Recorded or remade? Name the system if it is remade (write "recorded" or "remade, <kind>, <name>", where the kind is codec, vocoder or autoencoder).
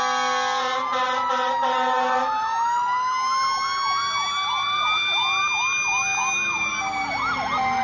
recorded